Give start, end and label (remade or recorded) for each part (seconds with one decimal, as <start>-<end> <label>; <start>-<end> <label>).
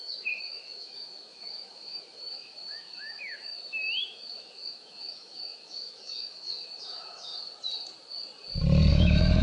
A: 0.0-7.3 remade; 7.3-8.9 recorded; 8.9-9.4 remade